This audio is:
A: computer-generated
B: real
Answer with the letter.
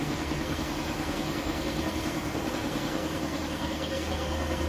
A